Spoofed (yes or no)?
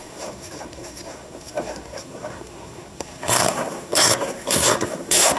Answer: yes